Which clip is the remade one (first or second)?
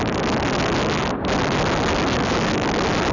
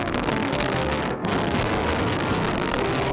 second